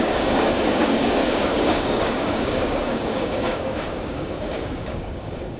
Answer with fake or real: fake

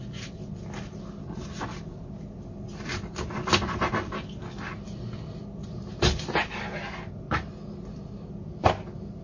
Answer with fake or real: real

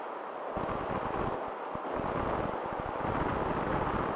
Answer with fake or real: real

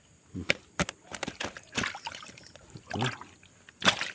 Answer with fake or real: real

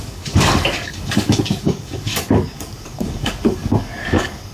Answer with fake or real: fake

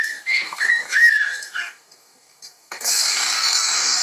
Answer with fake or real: fake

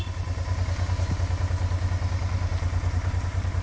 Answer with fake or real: real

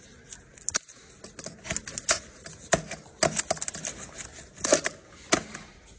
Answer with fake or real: real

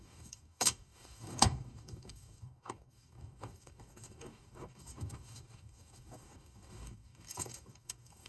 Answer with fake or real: fake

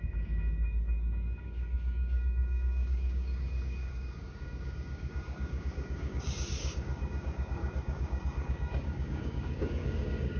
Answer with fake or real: fake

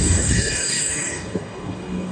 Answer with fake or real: fake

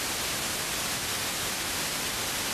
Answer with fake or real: real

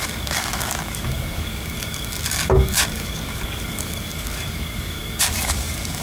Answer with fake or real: fake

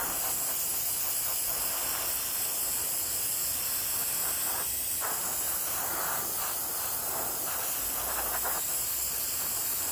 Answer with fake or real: real